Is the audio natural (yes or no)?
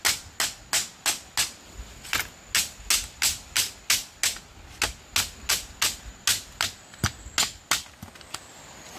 yes